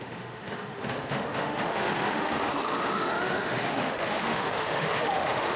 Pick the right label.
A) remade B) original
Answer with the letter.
A